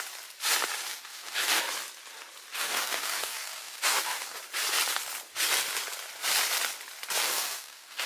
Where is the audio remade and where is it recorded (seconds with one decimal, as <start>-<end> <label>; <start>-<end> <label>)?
0.0-0.9 recorded; 0.9-1.6 remade; 1.6-2.5 recorded; 2.5-4.4 remade; 4.4-7.2 recorded; 7.2-8.1 remade